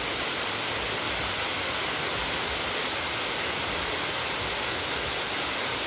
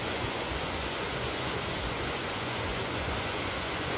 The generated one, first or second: second